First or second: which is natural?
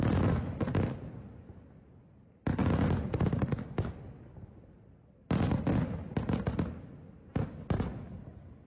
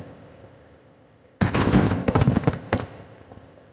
first